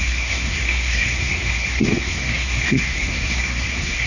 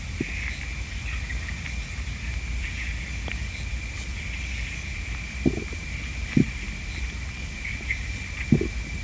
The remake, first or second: first